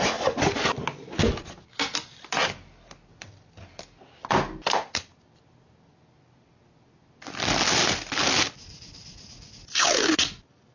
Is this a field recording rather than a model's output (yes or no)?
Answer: yes